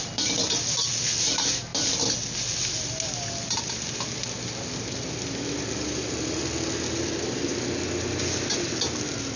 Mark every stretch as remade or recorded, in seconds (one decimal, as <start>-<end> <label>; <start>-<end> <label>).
0.0-9.4 recorded